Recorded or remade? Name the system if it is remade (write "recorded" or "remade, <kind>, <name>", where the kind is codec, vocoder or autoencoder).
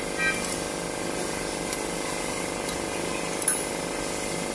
recorded